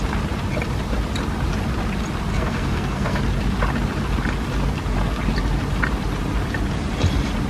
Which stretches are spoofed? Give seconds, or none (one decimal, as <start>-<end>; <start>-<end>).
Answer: 2.3-3.2